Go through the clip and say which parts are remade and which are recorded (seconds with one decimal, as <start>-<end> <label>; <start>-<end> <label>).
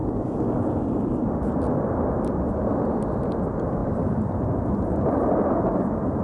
0.0-2.1 remade; 2.1-3.8 recorded; 3.8-5.6 remade; 5.6-6.2 recorded